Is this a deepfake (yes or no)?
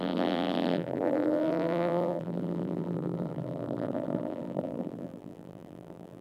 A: yes